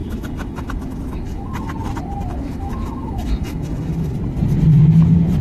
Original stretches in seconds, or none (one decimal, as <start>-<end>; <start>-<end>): 1.7-2.3; 4.1-5.4